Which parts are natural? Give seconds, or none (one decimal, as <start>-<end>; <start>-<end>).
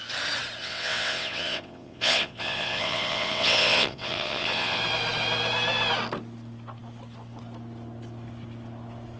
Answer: 0.0-0.6; 4.8-9.2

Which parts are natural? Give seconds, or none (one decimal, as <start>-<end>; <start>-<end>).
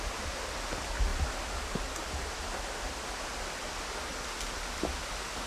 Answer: 0.0-5.5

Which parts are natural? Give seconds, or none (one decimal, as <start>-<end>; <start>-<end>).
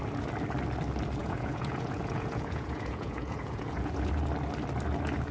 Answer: 0.0-1.2; 4.1-5.3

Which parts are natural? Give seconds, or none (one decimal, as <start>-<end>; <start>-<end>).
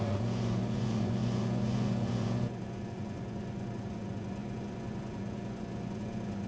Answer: none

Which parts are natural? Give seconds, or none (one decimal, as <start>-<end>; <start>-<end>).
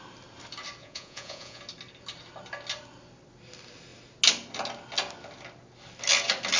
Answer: 0.0-0.8; 1.6-6.6